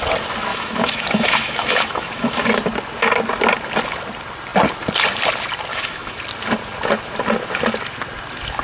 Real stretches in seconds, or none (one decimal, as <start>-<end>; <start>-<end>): 0.0-0.5; 2.5-5.7; 6.2-8.6